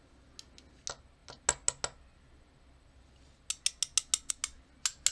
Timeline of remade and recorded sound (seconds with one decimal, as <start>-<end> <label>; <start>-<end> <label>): 0.0-5.1 recorded